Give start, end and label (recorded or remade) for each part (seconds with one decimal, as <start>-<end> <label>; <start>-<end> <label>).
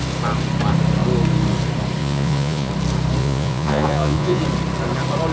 0.0-2.0 recorded; 2.0-2.7 remade; 2.7-3.2 recorded; 3.2-4.4 remade; 4.4-5.3 recorded